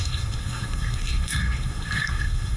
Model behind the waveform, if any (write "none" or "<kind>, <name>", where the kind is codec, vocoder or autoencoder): codec, SNAC